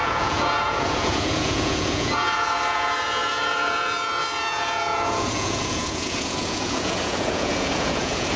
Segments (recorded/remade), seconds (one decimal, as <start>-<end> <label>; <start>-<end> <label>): 0.0-8.4 remade